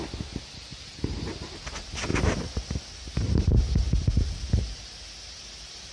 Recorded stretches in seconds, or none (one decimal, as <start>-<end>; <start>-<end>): 0.0-5.9